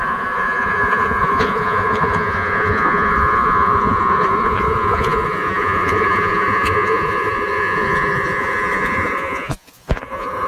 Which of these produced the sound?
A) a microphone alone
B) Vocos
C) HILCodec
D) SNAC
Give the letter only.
B